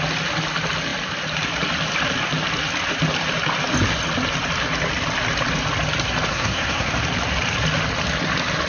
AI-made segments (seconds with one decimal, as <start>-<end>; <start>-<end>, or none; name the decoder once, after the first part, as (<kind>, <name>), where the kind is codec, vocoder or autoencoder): 6.3-6.9 (codec, SNAC)